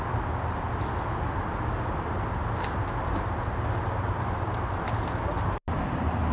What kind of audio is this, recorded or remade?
recorded